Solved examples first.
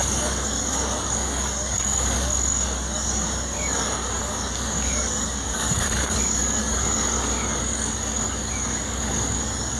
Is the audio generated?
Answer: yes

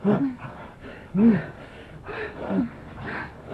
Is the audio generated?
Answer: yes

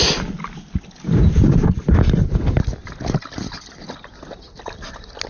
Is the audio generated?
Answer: no